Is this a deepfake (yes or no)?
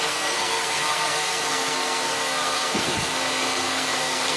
yes